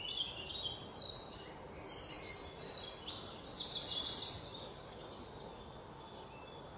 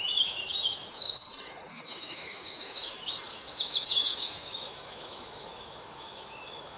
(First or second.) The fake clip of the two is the second